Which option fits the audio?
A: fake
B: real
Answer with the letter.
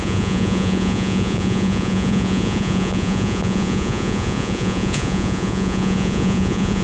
A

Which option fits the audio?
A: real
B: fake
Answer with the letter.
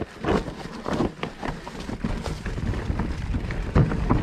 A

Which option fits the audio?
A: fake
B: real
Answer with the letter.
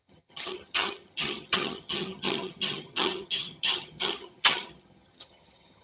A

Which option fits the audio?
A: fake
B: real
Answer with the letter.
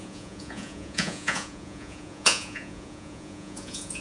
A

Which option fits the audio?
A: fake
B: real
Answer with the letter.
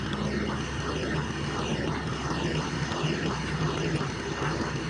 B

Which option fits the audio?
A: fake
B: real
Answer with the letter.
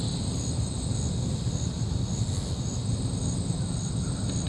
B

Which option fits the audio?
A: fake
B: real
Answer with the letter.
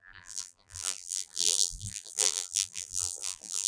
A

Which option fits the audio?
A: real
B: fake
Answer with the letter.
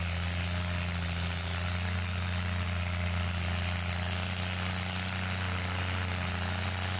A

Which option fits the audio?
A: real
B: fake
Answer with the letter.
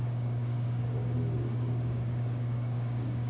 B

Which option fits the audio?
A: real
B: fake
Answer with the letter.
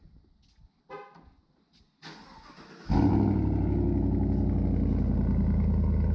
A